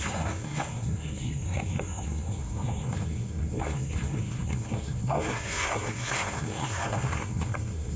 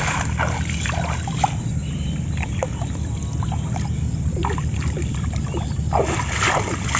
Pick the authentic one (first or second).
second